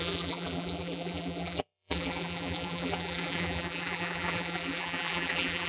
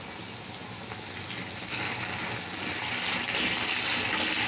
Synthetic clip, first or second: first